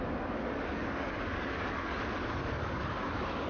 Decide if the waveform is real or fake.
fake